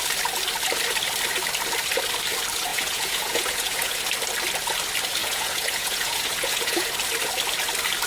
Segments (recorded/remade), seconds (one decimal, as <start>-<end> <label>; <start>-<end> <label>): 0.0-2.7 recorded; 2.7-4.0 remade; 4.0-5.2 recorded; 5.2-6.9 remade; 6.9-8.1 recorded